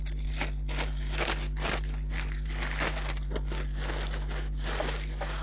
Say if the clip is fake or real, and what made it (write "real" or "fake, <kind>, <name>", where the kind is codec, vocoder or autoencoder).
real